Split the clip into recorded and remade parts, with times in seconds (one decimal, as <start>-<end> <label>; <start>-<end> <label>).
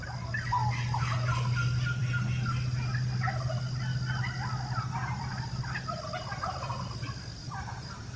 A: 0.0-8.2 recorded